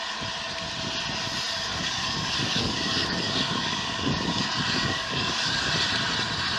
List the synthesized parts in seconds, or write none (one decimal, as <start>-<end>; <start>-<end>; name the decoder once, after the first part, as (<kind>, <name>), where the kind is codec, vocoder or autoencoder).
1.7-5.7 (codec, DAC)